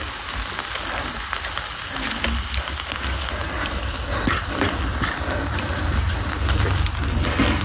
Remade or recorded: recorded